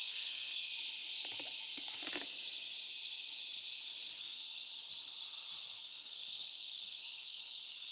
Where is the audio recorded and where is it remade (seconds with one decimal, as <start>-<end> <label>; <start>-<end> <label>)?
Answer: 0.0-0.7 remade; 0.7-4.2 recorded; 4.2-4.7 remade; 4.7-5.8 recorded; 5.8-7.9 remade